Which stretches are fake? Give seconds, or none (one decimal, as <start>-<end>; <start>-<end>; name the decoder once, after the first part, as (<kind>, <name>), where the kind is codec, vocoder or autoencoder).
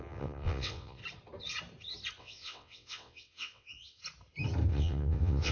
0.0-1.0 (vocoder, WaveNeXt); 2.2-4.0; 4.7-5.5